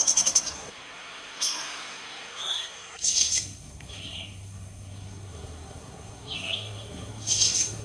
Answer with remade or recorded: remade